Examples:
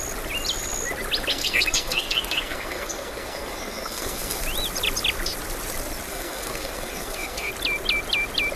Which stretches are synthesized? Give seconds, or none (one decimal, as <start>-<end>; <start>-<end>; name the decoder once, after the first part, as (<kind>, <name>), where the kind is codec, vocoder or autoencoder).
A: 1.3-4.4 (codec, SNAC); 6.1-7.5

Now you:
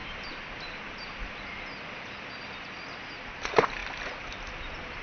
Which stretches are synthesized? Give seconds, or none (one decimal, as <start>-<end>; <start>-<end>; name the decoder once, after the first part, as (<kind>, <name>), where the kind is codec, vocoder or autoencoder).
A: none

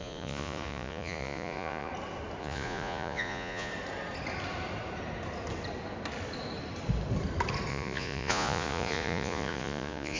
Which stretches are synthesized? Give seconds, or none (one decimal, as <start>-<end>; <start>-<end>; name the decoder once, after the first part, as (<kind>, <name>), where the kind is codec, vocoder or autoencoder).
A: 0.0-1.9 (vocoder, Vocos); 2.4-3.7; 7.7-10.2

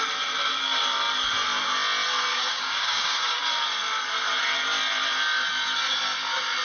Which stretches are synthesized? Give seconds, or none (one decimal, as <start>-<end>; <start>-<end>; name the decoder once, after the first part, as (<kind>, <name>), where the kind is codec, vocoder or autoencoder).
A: 2.3-3.4 (codec, DAC)